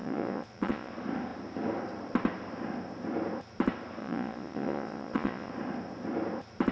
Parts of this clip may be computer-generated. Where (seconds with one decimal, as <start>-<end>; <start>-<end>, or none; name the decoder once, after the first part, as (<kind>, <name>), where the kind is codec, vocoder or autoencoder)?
0.0-0.9 (vocoder, Vocos); 4.0-5.5